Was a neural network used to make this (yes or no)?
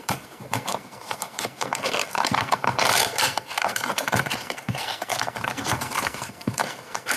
yes